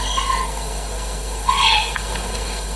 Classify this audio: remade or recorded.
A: remade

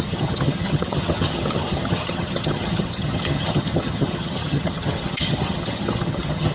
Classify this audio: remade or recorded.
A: remade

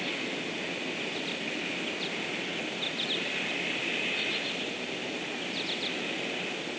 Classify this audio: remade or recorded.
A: recorded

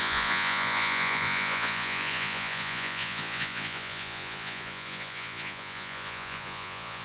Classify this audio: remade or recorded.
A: remade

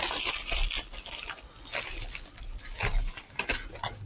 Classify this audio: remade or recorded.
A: recorded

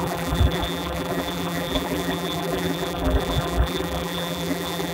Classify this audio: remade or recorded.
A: remade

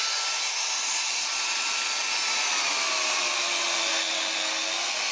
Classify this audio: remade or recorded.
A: recorded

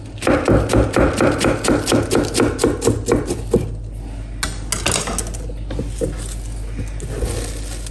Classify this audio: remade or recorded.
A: recorded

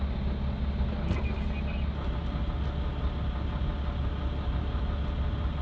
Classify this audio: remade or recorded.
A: recorded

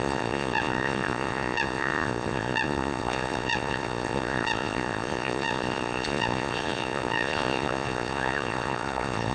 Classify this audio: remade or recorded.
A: remade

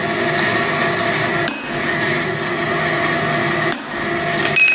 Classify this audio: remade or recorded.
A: recorded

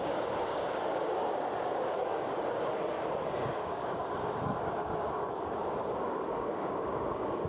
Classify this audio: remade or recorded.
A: remade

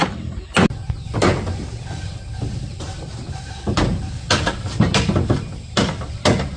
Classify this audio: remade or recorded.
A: recorded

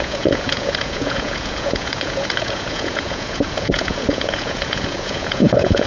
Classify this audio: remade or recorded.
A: remade